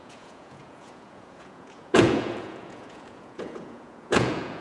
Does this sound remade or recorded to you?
remade